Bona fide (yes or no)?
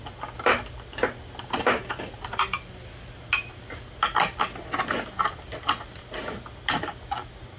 yes